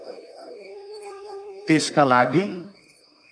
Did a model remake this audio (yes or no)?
yes